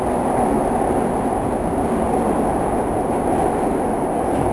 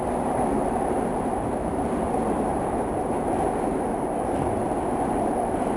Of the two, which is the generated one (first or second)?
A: second